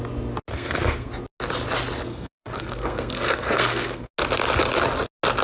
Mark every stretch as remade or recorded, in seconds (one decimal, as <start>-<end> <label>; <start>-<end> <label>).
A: 0.0-0.5 recorded; 0.5-1.1 remade; 1.1-2.1 recorded; 2.1-4.1 remade; 4.1-5.4 recorded

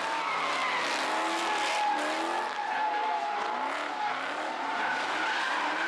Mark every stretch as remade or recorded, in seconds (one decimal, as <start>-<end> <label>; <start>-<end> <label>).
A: 0.0-5.9 recorded

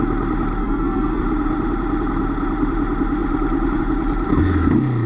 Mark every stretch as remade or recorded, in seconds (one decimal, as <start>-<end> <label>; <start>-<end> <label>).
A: 0.0-0.6 recorded; 0.6-1.2 remade; 1.2-5.1 recorded